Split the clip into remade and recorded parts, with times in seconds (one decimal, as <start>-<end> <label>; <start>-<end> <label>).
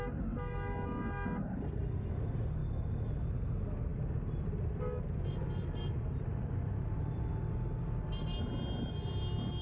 0.0-2.6 recorded; 2.6-3.2 remade; 3.2-9.6 recorded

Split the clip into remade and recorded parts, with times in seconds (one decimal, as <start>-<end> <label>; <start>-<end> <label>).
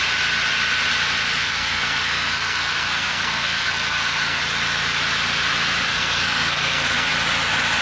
0.0-1.4 recorded; 1.4-4.4 remade; 4.4-5.9 recorded; 5.9-7.1 remade; 7.1-7.8 recorded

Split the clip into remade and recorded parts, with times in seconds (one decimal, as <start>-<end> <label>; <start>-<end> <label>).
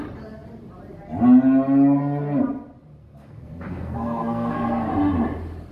0.0-3.0 recorded; 3.0-4.9 remade; 4.9-5.7 recorded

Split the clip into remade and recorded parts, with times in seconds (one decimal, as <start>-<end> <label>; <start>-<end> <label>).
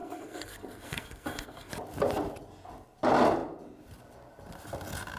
0.0-1.7 remade; 1.7-5.2 recorded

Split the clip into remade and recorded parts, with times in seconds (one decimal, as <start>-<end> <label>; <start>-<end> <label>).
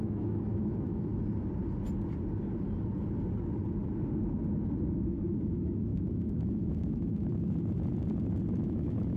0.0-1.1 remade; 1.1-4.9 recorded; 4.9-7.3 remade; 7.3-8.5 recorded; 8.5-9.2 remade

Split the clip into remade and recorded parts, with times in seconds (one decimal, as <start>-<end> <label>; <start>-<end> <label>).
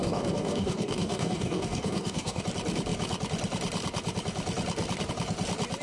0.0-2.4 remade; 2.4-5.8 recorded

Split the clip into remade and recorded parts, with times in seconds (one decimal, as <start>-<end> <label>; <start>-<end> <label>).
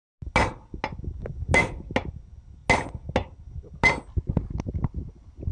0.0-5.5 recorded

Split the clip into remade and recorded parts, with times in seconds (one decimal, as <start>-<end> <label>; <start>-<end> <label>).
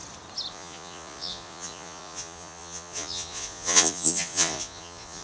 0.0-0.5 recorded; 0.5-5.2 remade